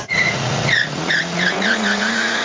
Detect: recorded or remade remade